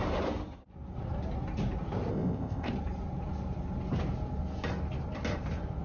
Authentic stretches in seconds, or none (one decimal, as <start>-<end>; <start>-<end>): 0.0-2.1; 2.7-5.8